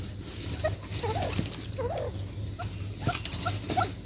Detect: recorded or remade recorded